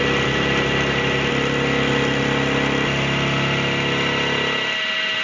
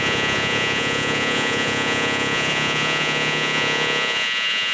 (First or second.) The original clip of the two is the first